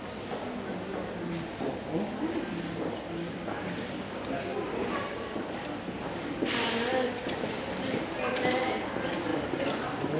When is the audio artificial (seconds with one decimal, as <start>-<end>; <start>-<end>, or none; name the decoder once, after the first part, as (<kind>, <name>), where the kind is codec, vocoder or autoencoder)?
none